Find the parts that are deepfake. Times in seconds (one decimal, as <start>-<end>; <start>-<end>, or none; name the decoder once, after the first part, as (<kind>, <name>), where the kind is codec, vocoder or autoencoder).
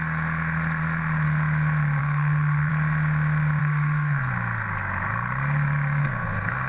2.0-2.7 (codec, SNAC); 3.6-4.3; 6.0-6.7